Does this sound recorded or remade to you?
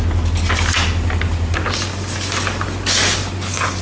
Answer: recorded